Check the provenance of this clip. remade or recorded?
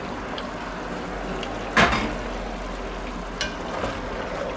recorded